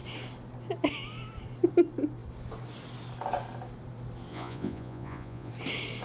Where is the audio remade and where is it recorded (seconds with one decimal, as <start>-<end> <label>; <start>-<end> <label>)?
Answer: 0.0-4.3 recorded; 4.3-5.5 remade; 5.5-6.0 recorded